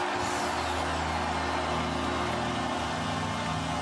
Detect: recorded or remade recorded